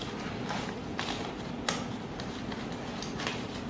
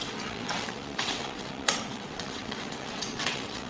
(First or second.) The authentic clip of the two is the first